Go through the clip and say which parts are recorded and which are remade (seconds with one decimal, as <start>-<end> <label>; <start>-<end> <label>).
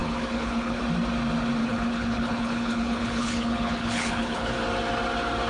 0.0-0.8 remade; 0.8-1.6 recorded; 1.6-4.5 remade; 4.5-5.5 recorded